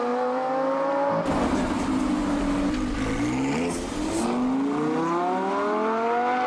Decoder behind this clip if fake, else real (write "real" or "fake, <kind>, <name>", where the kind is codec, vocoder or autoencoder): real